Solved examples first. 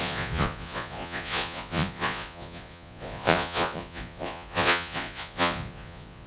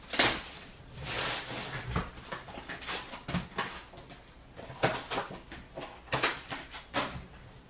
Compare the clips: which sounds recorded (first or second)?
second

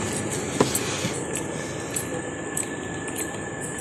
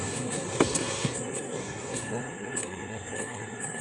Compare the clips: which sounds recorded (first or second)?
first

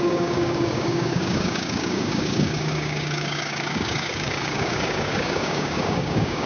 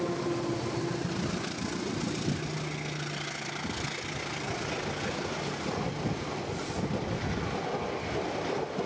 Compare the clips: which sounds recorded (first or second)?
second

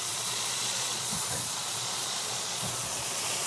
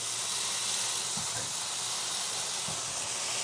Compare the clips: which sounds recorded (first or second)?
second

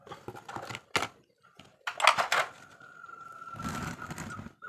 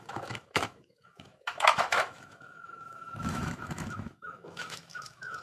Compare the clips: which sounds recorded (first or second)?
first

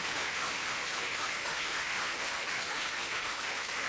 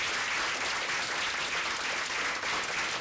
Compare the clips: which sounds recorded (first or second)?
second